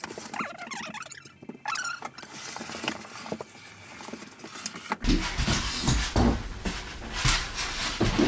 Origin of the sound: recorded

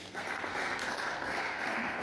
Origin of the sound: remade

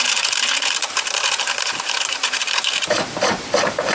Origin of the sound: remade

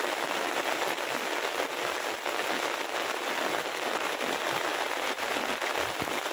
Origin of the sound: recorded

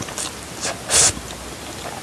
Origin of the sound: recorded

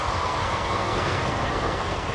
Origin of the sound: remade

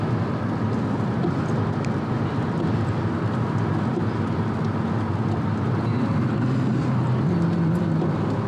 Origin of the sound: recorded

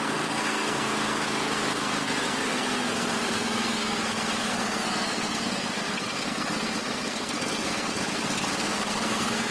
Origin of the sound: remade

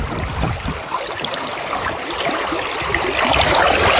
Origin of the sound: recorded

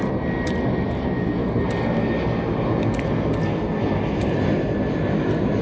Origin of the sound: recorded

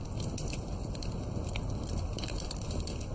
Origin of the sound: recorded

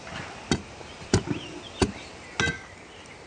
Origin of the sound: recorded